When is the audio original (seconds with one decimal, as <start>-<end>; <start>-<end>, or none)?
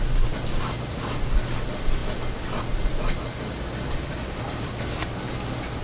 0.0-5.8